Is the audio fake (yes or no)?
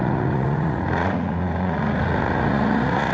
yes